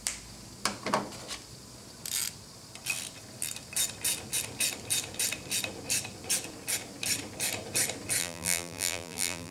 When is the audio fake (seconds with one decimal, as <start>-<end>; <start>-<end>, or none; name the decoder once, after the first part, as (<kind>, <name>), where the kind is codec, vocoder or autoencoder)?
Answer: 8.2-9.5 (vocoder, BigVGAN v2)